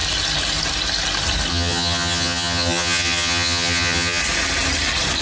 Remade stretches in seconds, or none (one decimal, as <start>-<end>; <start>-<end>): 1.5-4.2